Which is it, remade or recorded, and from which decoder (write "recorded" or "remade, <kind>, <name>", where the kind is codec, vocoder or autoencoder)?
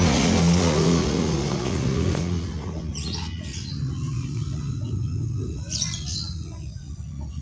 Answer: remade, vocoder, Vocos